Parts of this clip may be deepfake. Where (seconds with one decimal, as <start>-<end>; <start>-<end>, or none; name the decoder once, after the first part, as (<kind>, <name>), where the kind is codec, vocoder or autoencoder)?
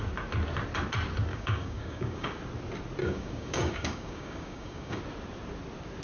1.3-2.4 (codec, DAC); 3.0-5.0